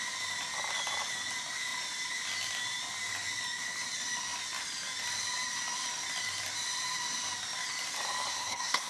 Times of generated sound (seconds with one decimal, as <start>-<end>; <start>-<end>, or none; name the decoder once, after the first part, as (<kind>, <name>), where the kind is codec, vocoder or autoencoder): 8.3-8.9 (codec, SNAC)